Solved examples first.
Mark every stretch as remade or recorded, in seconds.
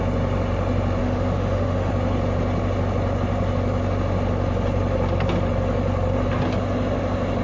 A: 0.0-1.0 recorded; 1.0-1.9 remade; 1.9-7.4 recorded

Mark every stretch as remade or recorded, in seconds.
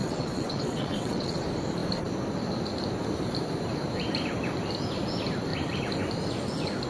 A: 0.0-1.4 remade; 1.4-6.9 recorded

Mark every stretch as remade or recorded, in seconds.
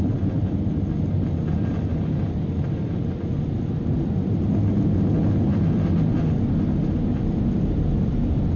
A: 0.0-8.6 recorded